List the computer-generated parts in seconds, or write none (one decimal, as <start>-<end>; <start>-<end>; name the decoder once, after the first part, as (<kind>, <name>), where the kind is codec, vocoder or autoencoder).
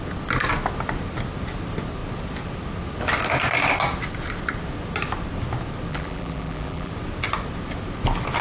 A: 5.9-6.9 (vocoder, BigVGAN v2)